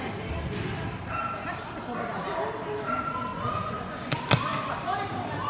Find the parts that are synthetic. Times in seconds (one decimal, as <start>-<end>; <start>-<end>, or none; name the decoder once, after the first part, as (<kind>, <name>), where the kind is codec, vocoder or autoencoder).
3.3-4.1 (vocoder, Vocos)